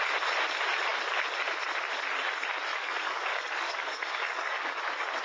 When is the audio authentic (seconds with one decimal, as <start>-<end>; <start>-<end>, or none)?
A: 0.0-2.7; 4.8-5.2